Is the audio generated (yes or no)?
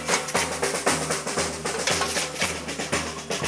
no